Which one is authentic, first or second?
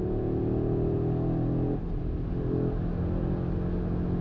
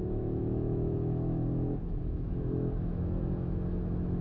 first